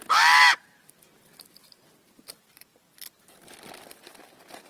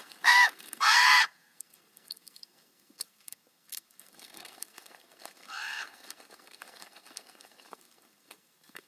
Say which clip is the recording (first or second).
first